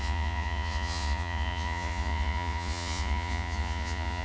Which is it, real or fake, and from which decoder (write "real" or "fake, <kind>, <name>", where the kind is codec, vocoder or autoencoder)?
fake, vocoder, Vocos